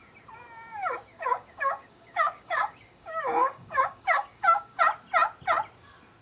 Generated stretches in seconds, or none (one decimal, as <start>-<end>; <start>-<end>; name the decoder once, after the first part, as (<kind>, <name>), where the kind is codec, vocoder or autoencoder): 1.1-4.8 (codec, DAC)